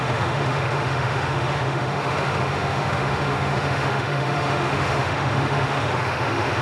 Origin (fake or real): fake